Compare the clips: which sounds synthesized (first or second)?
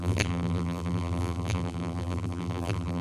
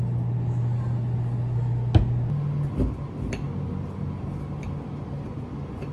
first